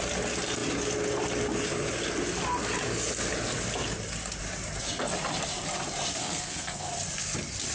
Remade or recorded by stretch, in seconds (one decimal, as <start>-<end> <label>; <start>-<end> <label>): 0.0-6.2 recorded; 6.2-6.9 remade; 6.9-7.7 recorded